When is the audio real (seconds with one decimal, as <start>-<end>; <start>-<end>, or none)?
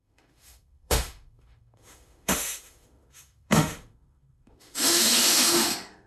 none